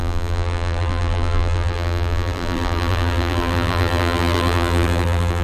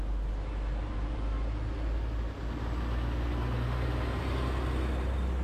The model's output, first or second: first